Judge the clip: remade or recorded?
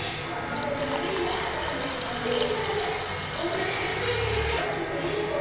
recorded